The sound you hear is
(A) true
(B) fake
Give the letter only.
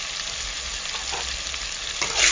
A